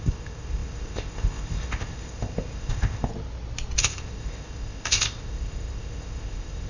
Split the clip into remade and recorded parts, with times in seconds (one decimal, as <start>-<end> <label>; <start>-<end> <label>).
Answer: 0.0-3.1 remade; 3.1-3.8 recorded; 3.8-6.7 remade